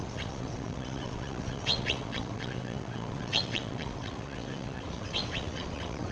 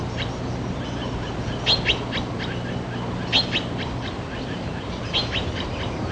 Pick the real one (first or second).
second